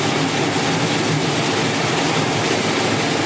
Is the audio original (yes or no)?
yes